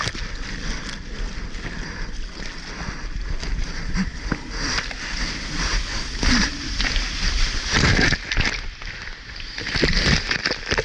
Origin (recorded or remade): recorded